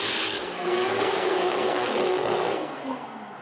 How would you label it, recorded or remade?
remade